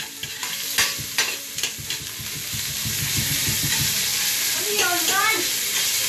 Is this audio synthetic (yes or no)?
no